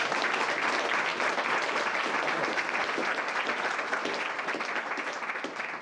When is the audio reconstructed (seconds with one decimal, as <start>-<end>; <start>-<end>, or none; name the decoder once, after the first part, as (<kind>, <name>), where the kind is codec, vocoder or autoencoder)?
none